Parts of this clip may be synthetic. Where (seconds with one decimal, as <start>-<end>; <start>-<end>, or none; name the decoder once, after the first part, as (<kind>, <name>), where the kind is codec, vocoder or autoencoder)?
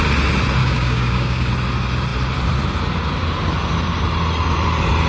0.6-1.5 (codec, DAC)